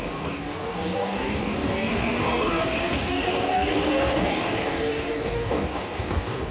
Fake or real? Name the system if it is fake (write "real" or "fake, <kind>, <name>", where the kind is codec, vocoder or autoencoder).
fake, codec, DAC